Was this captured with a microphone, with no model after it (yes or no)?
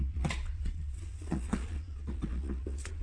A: no